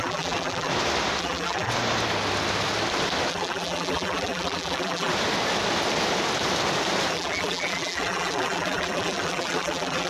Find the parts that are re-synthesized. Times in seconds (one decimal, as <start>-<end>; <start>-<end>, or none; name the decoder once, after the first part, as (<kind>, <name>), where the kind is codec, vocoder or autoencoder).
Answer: 0.0-0.7 (vocoder, BigVGAN v2); 1.2-1.7; 3.3-5.1; 7.1-10.1